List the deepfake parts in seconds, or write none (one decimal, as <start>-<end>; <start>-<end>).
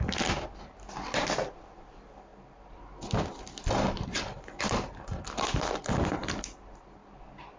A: none